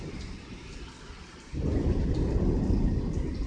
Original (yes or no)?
yes